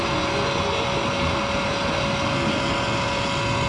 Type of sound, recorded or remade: recorded